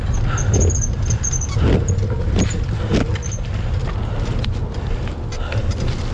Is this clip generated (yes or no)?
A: no